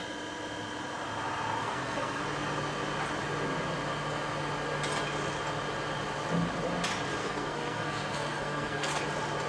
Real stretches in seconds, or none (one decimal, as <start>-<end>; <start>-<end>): 0.0-1.6; 2.2-7.2; 9.0-9.5